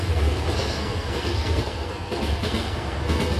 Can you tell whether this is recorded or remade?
remade